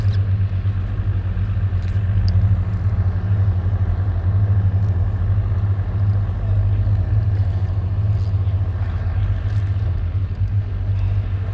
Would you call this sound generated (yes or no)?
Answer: no